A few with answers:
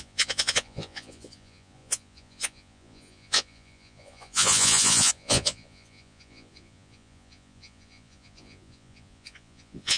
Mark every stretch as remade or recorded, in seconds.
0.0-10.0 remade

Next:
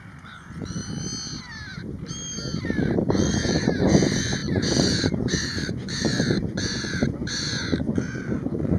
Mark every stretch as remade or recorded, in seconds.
0.0-0.8 remade; 0.8-3.1 recorded; 3.1-8.8 remade

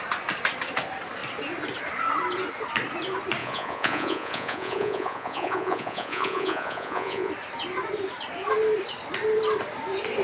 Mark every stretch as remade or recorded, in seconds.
0.0-3.4 recorded; 3.4-7.3 remade; 7.3-10.2 recorded

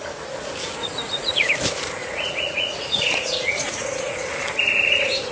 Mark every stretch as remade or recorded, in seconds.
0.0-0.8 recorded; 0.8-1.5 remade; 1.5-2.0 recorded; 2.0-4.3 remade; 4.3-5.3 recorded

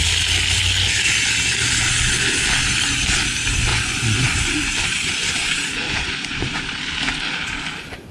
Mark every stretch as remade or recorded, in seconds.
0.0-3.7 recorded; 3.7-6.8 remade; 6.8-8.1 recorded

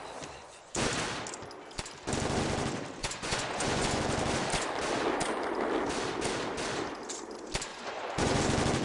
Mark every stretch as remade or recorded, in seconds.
0.0-0.4 recorded; 0.4-0.9 remade; 0.9-3.0 recorded; 3.0-4.0 remade; 4.0-7.7 recorded; 7.7-8.4 remade; 8.4-8.8 recorded

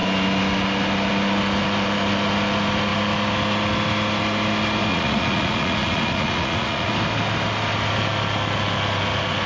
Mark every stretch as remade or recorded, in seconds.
0.0-4.9 recorded; 4.9-6.9 remade; 6.9-9.5 recorded